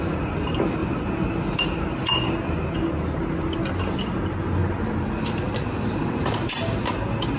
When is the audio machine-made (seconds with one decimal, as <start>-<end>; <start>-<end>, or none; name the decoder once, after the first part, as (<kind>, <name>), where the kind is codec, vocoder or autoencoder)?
4.6-6.9 (vocoder, BigVGAN v2)